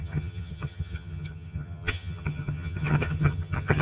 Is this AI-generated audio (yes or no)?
yes